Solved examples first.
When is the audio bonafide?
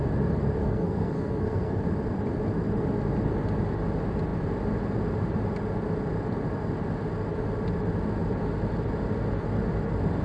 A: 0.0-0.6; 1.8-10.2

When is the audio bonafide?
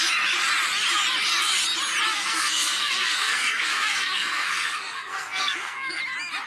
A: 0.0-2.1; 6.0-6.5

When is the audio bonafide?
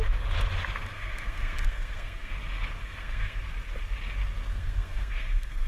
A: 0.0-0.9; 2.3-2.8; 3.4-4.5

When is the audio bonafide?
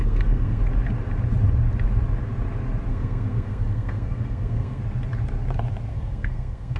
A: 0.6-2.9; 4.8-5.9